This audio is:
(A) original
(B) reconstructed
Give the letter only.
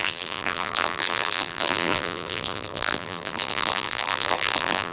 B